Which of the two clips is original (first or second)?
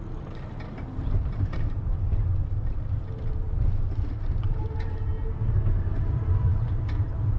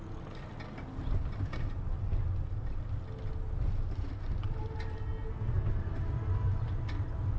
second